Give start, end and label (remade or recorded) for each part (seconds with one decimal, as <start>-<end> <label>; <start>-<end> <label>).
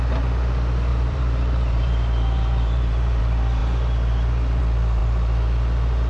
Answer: 0.0-0.9 recorded; 0.9-3.2 remade; 3.2-6.1 recorded